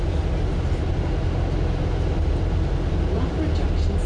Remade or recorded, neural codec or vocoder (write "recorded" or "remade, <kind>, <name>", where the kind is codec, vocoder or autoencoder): recorded